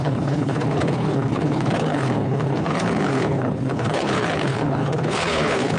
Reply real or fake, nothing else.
fake